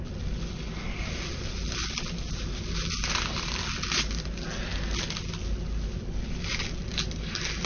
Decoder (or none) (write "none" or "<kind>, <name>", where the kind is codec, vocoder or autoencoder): none